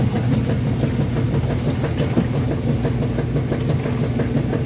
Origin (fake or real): real